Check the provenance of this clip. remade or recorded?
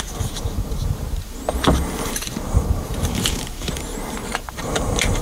remade